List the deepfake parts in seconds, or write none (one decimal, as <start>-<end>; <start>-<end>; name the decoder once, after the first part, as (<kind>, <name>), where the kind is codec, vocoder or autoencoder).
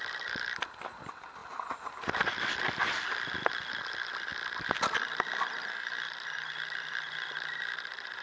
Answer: none